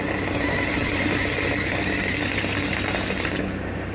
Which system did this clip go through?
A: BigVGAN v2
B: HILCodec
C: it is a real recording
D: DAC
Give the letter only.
C